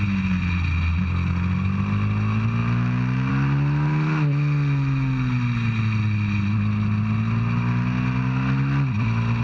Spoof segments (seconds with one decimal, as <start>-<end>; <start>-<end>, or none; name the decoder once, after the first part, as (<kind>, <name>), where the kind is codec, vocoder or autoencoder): none